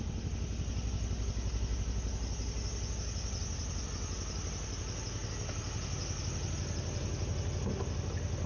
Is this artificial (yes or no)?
no